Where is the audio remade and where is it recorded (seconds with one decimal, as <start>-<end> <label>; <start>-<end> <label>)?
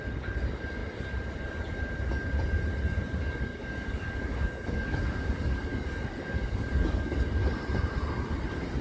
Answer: 0.0-3.5 recorded; 3.5-7.3 remade; 7.3-8.8 recorded